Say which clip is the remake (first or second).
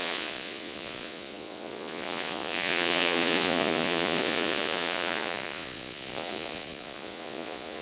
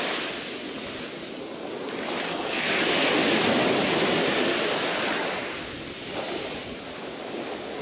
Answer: first